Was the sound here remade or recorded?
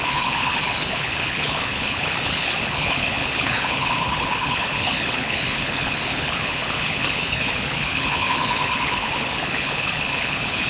remade